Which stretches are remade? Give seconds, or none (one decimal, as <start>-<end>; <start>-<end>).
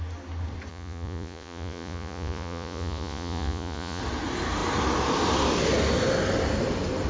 0.7-4.0